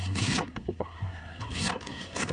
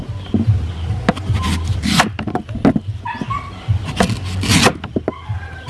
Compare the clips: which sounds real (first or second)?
second